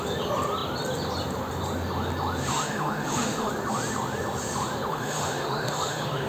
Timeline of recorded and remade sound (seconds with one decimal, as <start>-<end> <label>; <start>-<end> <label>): 0.0-2.5 recorded; 2.5-3.5 remade; 3.5-4.9 recorded; 4.9-6.3 remade